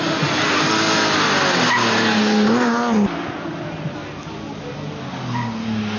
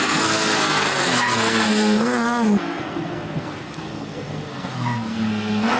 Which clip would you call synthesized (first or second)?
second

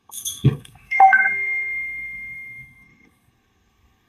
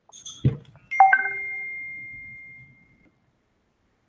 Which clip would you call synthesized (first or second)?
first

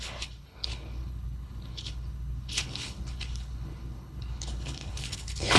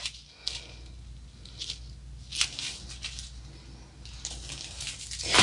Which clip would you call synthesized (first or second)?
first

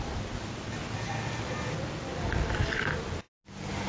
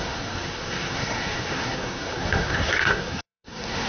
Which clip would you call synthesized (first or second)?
second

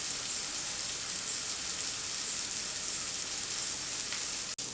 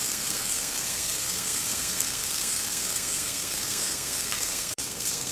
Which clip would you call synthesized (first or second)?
second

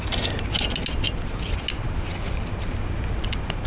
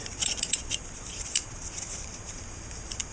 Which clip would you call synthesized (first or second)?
second